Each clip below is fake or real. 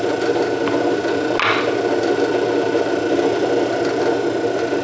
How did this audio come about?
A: real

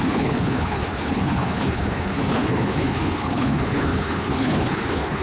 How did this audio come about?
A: fake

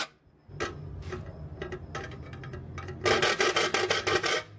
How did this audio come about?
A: real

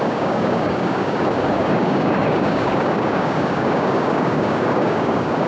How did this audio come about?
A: fake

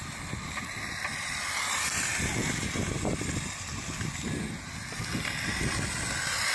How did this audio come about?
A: real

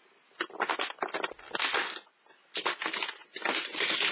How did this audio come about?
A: real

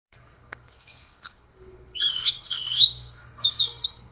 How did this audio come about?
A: fake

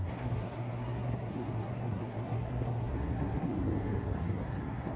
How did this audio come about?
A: fake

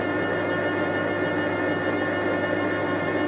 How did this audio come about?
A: real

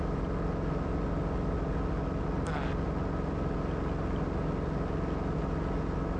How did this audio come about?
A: real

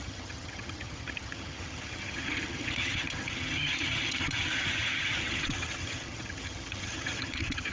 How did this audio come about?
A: fake